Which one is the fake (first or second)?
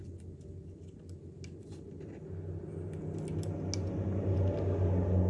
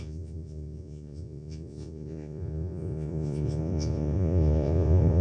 second